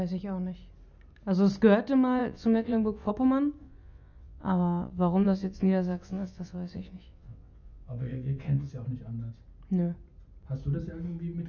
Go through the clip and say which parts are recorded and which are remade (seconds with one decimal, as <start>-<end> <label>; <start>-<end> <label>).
0.0-2.2 recorded; 2.2-3.1 remade; 3.1-3.6 recorded; 3.6-8.7 remade; 8.7-11.5 recorded